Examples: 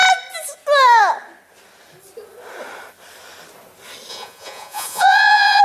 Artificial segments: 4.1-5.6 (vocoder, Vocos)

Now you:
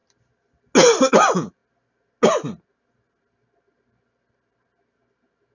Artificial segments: none

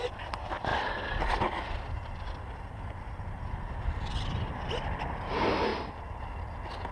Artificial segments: none

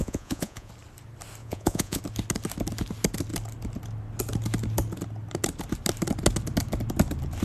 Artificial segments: 0.0-0.7 (vocoder, Vocos); 1.4-2.0